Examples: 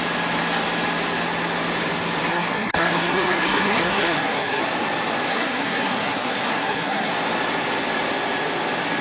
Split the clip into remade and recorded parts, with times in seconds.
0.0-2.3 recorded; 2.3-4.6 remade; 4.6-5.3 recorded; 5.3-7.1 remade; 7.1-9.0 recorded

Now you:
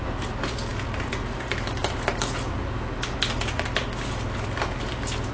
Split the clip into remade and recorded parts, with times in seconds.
0.0-5.3 recorded

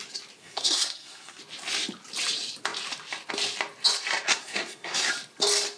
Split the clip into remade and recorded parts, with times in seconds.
0.0-0.4 recorded; 0.4-1.4 remade; 1.4-4.3 recorded; 4.3-5.1 remade; 5.1-5.8 recorded

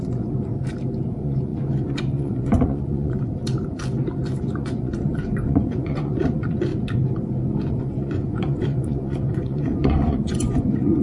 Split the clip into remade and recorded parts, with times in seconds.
0.0-0.5 remade; 0.5-1.1 recorded; 1.1-3.3 remade; 3.3-4.4 recorded; 4.4-6.7 remade; 6.7-7.7 recorded; 7.7-11.0 remade